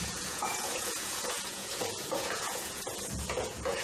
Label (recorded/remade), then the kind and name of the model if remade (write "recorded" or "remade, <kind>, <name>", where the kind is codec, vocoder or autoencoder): remade, vocoder, Vocos